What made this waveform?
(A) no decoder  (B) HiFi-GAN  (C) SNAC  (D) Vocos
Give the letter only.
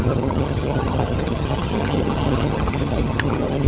B